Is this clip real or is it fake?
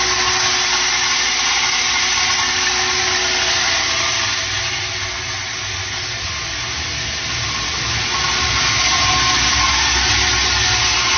real